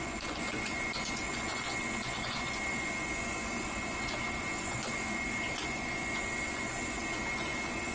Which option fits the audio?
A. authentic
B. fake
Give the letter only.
B